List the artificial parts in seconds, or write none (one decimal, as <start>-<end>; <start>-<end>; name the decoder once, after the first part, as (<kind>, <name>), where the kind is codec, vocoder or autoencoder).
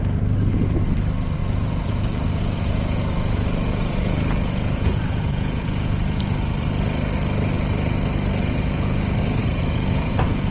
1.4-6.2 (vocoder, Vocos); 8.4-9.0; 9.4-10.5